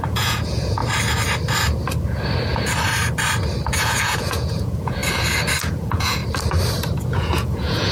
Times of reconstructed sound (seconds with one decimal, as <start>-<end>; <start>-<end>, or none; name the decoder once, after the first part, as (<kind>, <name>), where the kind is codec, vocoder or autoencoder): 0.0-0.8 (vocoder, Vocos); 3.7-5.0; 5.6-6.2; 7.1-7.9